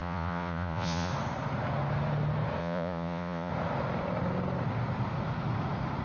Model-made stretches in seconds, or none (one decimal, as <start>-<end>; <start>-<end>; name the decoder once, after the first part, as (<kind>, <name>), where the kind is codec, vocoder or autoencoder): 0.0-1.1 (vocoder, Vocos); 2.6-3.5